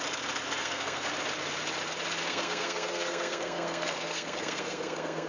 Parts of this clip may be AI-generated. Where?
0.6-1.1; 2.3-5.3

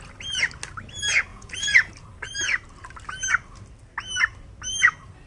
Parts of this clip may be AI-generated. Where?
1.3-1.9

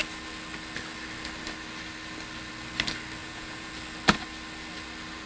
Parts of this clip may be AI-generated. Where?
3.2-3.7

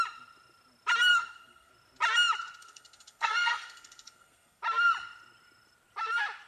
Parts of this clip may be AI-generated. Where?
1.1-1.7; 2.6-4.6